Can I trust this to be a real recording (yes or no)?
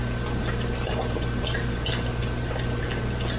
yes